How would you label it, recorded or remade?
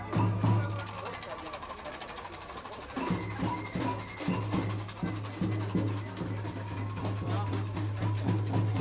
recorded